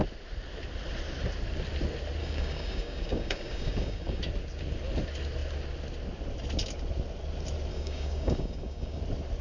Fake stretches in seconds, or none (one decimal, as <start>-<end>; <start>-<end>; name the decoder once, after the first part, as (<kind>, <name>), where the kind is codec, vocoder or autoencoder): 2.2-4.2 (codec, DAC); 7.7-9.0